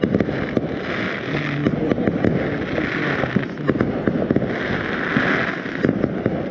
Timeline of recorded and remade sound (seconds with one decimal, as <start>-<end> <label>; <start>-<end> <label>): 0.0-6.5 recorded